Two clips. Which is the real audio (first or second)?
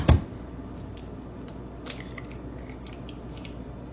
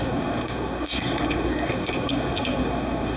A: first